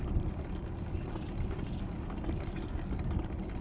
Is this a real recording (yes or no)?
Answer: yes